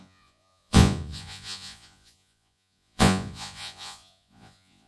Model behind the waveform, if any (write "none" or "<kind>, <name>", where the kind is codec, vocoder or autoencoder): vocoder, Vocos